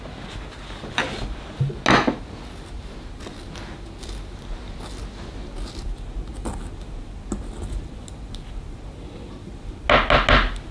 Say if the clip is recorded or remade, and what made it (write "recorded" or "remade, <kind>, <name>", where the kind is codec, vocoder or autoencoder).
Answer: recorded